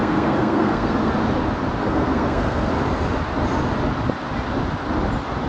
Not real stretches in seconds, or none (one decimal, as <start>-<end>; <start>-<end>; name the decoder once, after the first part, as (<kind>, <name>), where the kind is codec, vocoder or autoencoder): 0.0-1.1 (codec, SNAC); 1.8-2.7